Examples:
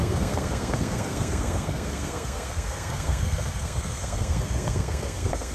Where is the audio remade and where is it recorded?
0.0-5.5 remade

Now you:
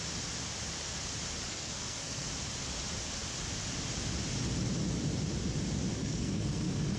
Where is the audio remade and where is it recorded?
0.0-1.5 recorded; 1.5-2.3 remade; 2.3-5.9 recorded; 5.9-7.0 remade

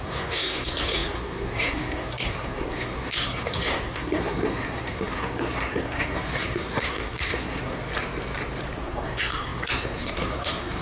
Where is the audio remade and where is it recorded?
0.0-7.8 remade; 7.8-8.8 recorded; 8.8-10.8 remade

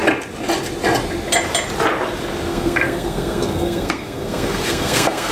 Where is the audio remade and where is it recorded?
0.0-2.5 recorded; 2.5-5.3 remade

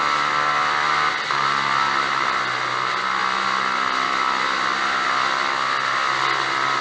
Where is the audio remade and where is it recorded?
0.0-6.8 recorded

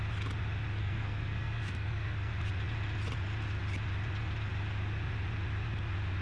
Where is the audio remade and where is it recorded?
0.0-0.8 recorded; 0.8-2.5 remade; 2.5-6.2 recorded

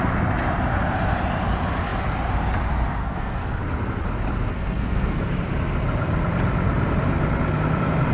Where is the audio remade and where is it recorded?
0.0-3.0 recorded; 3.0-3.6 remade; 3.6-4.5 recorded; 4.5-5.2 remade; 5.2-8.1 recorded

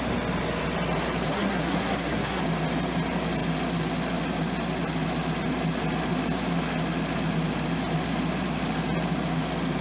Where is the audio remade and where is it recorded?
0.0-1.3 recorded; 1.3-2.4 remade; 2.4-9.8 recorded